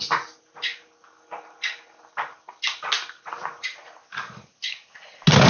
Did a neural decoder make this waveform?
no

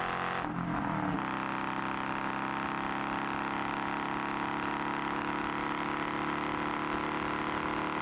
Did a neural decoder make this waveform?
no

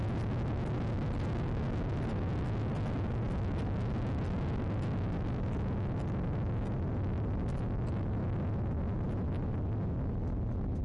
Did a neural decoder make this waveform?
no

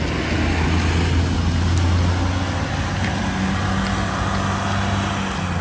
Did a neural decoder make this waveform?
no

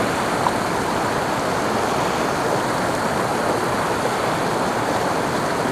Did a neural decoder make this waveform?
no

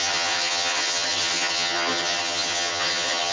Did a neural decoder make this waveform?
yes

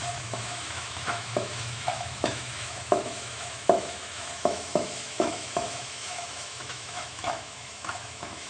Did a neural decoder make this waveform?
yes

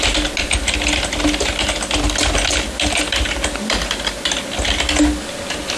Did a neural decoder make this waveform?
no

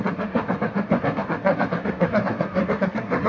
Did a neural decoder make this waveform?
yes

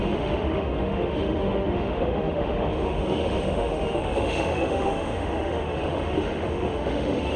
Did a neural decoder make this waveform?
yes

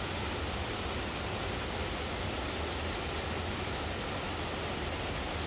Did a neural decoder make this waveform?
no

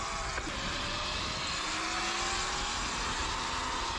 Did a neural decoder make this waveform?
no